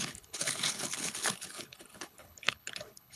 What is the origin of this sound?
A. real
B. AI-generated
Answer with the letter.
B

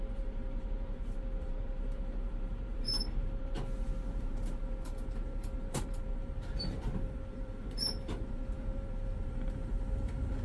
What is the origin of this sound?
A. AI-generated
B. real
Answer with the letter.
A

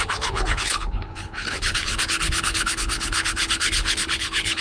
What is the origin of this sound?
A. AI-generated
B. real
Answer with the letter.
A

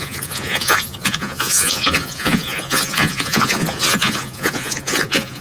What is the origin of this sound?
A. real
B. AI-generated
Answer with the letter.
B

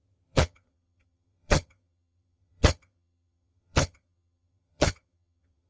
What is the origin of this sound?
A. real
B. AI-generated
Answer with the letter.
B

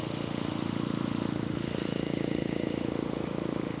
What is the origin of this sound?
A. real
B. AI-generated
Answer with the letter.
B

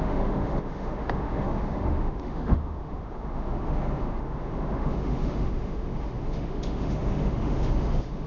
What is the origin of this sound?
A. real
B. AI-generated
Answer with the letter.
B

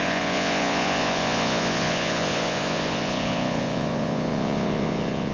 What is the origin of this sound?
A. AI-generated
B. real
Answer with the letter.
A